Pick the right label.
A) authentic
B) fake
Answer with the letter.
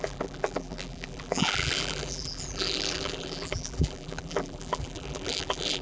B